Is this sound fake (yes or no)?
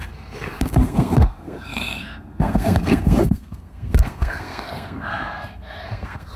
yes